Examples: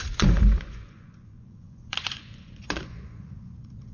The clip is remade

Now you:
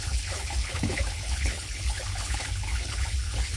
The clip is remade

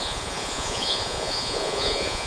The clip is remade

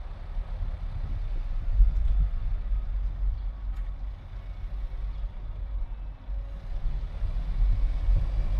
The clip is recorded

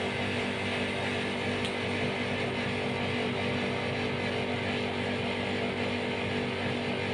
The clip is recorded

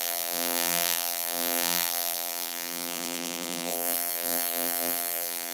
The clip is remade